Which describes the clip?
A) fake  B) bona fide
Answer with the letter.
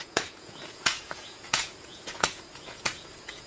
A